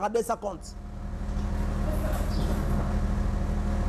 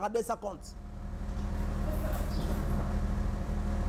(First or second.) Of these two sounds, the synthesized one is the second